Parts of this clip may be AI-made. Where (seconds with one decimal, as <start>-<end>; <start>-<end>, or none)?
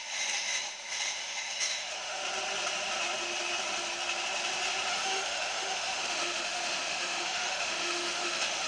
0.0-2.2; 4.9-8.7